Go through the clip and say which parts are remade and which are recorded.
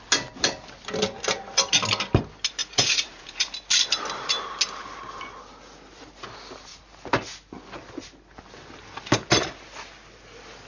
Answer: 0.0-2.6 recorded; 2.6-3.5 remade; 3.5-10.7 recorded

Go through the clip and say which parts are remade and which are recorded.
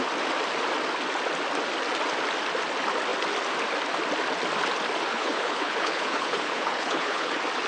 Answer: 0.0-5.1 recorded; 5.1-7.3 remade; 7.3-7.7 recorded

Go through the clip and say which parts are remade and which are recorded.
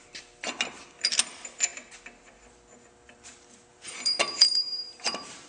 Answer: 0.0-3.7 recorded; 3.7-5.5 remade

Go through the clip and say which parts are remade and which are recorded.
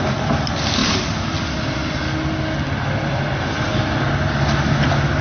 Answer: 0.0-5.2 recorded